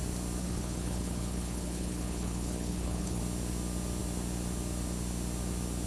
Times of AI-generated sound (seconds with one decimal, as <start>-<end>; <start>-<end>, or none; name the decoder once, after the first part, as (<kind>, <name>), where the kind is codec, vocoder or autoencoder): 0.4-3.2 (codec, HILCodec)

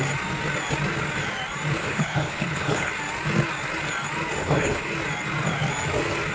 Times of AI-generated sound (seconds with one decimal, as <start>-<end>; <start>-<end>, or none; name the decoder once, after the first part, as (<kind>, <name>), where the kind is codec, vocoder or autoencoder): 1.8-2.9 (codec, HILCodec); 4.4-4.9